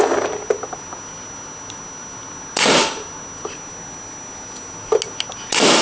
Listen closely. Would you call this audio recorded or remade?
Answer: recorded